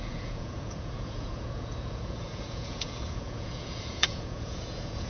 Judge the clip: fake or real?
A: fake